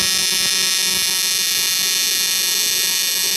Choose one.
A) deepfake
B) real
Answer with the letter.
B